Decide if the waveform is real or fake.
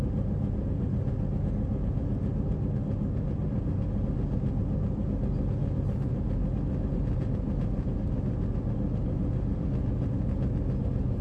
real